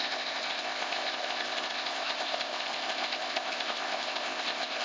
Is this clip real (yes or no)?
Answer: no